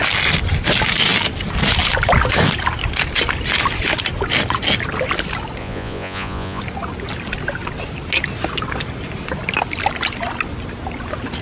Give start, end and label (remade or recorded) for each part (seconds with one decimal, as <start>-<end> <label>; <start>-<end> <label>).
0.0-5.6 recorded; 5.6-6.6 remade; 6.6-11.4 recorded